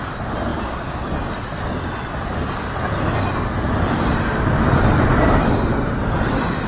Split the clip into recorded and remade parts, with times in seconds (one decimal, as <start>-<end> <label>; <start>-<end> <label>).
0.0-6.7 recorded